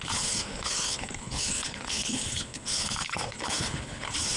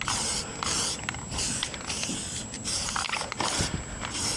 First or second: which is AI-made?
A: first